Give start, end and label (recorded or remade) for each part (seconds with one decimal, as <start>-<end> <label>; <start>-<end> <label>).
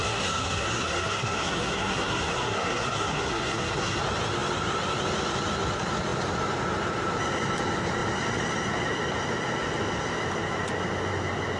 0.0-4.0 remade; 4.0-11.6 recorded